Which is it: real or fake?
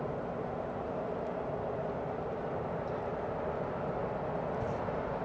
real